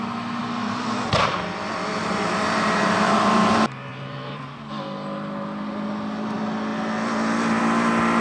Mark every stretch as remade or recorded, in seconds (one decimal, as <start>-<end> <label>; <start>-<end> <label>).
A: 0.0-2.0 recorded; 2.0-3.5 remade; 3.5-3.9 recorded; 3.9-4.4 remade; 4.4-8.2 recorded